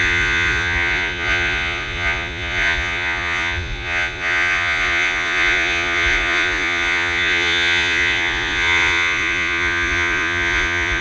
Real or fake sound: fake